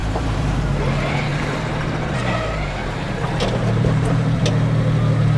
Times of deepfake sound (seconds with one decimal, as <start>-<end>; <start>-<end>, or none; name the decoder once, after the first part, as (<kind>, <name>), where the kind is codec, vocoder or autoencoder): 0.0-0.8 (vocoder, BigVGAN v2); 1.3-4.5